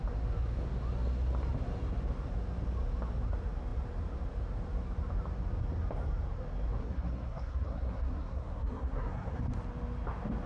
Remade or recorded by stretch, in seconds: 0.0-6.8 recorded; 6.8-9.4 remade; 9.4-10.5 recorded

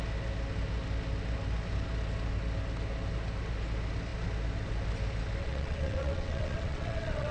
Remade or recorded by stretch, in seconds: 0.0-5.4 recorded; 5.4-7.3 remade

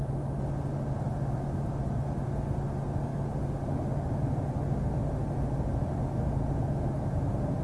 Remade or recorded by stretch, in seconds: 0.0-7.6 recorded